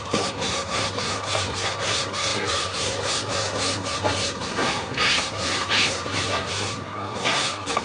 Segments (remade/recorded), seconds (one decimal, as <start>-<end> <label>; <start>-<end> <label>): 0.0-7.8 remade